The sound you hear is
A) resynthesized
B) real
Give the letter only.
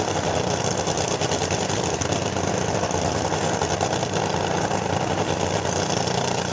B